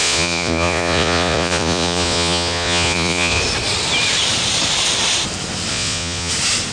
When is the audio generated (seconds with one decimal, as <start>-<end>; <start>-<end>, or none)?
0.0-3.4; 5.7-6.3